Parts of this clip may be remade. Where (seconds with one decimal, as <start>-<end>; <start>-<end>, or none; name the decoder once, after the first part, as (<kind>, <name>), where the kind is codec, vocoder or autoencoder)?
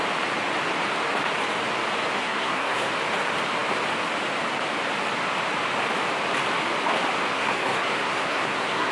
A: 2.2-2.9 (codec, SNAC); 7.3-8.9